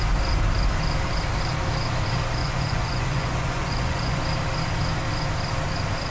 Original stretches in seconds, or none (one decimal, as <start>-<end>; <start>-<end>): 0.0-2.4; 4.2-6.1